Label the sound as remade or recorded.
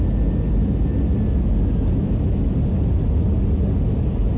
recorded